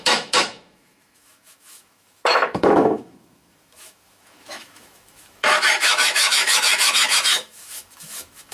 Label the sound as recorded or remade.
remade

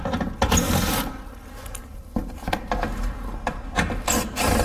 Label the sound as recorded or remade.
recorded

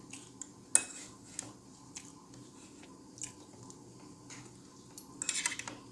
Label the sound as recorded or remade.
recorded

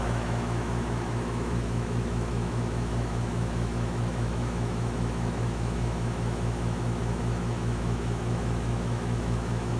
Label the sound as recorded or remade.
remade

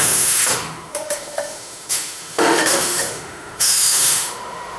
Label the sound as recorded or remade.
remade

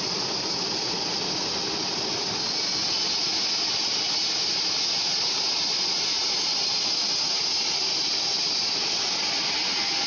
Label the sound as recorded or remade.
recorded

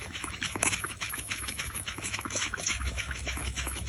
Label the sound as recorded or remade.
remade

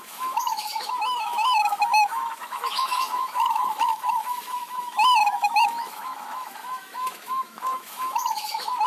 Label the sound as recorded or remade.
remade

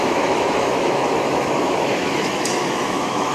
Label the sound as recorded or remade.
remade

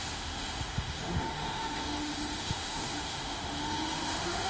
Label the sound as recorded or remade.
remade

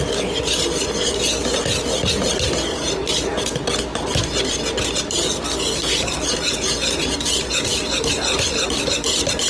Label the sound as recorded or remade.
recorded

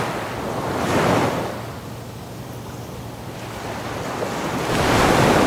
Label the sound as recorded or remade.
recorded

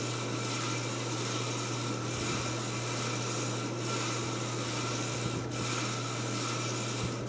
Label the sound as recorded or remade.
recorded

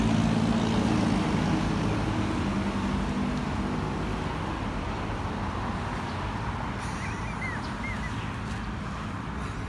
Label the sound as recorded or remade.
recorded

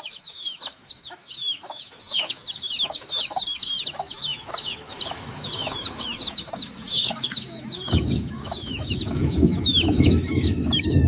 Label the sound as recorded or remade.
remade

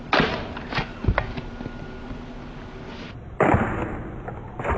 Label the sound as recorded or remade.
recorded